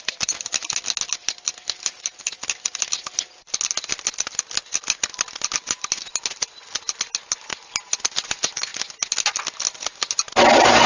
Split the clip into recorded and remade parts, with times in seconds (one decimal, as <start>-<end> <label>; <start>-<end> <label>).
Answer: 0.0-10.9 recorded